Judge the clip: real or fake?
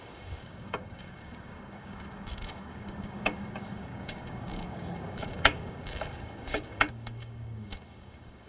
fake